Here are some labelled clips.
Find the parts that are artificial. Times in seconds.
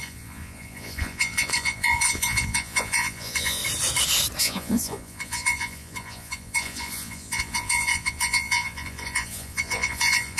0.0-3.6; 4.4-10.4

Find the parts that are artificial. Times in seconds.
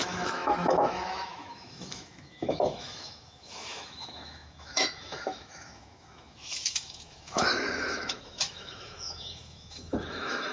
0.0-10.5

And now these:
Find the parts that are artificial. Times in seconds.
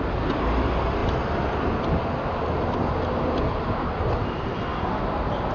none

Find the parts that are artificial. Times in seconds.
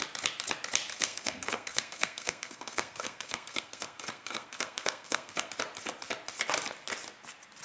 0.9-5.5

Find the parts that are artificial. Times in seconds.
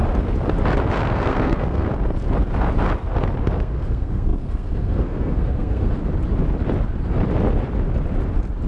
1.0-1.9; 3.6-6.0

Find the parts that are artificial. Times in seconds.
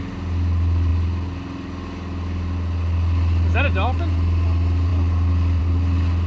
none